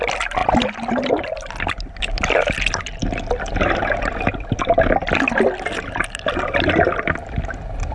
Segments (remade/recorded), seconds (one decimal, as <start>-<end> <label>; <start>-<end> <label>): 0.0-7.9 recorded